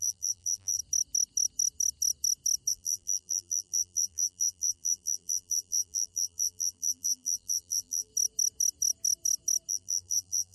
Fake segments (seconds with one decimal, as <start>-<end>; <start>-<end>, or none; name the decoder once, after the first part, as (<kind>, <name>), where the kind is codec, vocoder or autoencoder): 0.0-0.8 (vocoder, BigVGAN v2); 2.7-8.1; 9.7-10.5